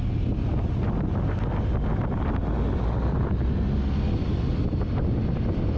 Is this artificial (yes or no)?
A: no